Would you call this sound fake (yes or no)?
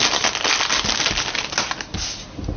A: no